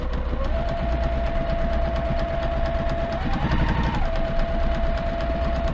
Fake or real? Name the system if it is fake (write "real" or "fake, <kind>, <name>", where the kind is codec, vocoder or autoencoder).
real